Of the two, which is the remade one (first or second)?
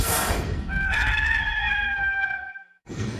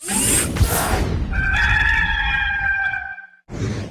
first